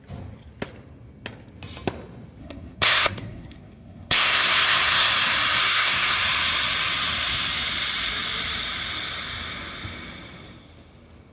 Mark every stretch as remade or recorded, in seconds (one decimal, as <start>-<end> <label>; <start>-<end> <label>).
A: 0.0-2.4 recorded; 2.4-5.1 remade; 5.1-5.6 recorded; 5.6-6.2 remade; 6.2-11.3 recorded